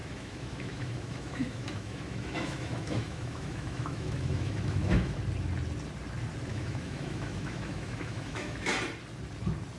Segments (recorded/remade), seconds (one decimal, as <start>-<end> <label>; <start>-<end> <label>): 0.0-5.2 remade; 5.2-6.5 recorded; 6.5-8.7 remade; 8.7-9.8 recorded